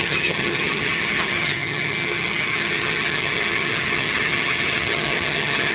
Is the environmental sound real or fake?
fake